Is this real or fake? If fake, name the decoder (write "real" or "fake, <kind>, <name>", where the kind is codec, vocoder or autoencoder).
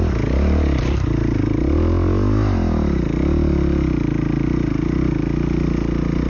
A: real